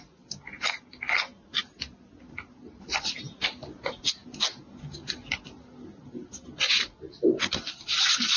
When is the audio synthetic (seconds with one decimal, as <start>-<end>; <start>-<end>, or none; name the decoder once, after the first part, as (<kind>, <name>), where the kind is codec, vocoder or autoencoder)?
none